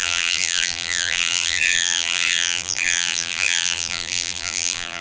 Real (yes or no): no